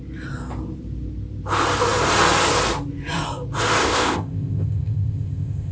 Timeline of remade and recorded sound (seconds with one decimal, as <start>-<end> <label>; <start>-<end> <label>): 0.0-3.8 recorded; 3.8-5.7 remade